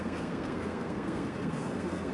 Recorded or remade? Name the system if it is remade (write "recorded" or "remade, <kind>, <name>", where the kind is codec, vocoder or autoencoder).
remade, codec, SNAC